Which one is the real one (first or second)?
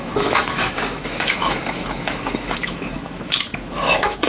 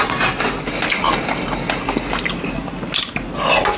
second